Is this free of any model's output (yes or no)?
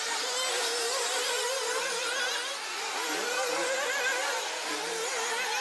yes